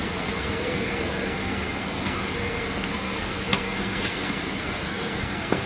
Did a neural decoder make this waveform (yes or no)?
yes